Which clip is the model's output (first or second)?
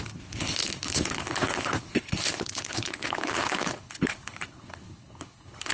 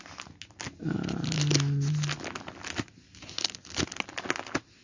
first